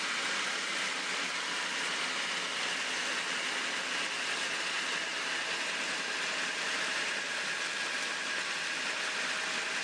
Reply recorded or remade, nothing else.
recorded